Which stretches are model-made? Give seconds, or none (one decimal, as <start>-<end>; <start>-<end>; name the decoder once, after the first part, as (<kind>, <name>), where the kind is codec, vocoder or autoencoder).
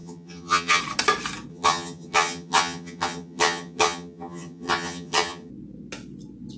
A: 0.0-0.8 (vocoder, HiFi-GAN); 1.5-5.5